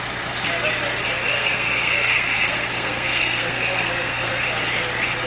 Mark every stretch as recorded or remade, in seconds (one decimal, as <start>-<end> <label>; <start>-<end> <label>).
0.0-1.3 recorded; 1.3-4.3 remade; 4.3-5.3 recorded